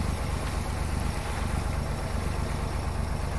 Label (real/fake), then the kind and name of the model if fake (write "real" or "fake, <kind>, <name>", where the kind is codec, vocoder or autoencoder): real